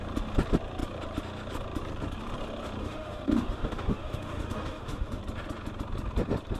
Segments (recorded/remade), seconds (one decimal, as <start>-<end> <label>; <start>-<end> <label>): 0.0-2.8 recorded; 2.8-5.2 remade; 5.2-6.6 recorded